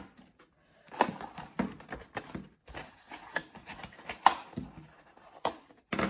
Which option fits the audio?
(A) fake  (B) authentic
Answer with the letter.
B